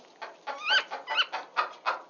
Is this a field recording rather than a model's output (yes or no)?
yes